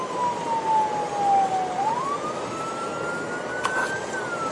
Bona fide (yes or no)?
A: yes